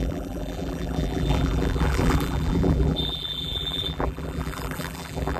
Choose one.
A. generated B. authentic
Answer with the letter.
A